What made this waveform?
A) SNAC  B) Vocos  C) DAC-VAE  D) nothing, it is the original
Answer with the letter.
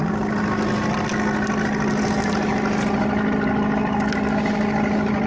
D